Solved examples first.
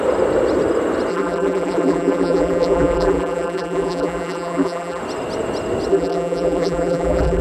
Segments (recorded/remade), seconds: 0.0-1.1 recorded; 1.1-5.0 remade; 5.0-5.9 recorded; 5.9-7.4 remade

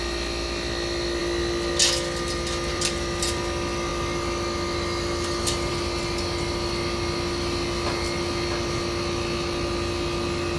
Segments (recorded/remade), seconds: 0.0-2.7 recorded; 2.7-3.4 remade; 3.4-10.6 recorded

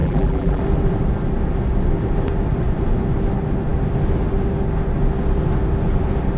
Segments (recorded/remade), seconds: 0.0-0.6 remade; 0.6-6.4 recorded

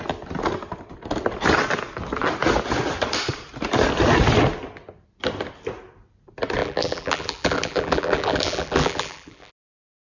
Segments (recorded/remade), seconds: 0.0-6.6 recorded; 6.6-9.5 remade; 9.5-10.2 recorded

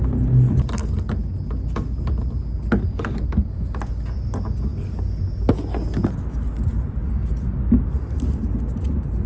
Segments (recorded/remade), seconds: 0.0-9.3 recorded